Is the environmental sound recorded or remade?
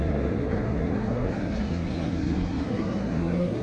remade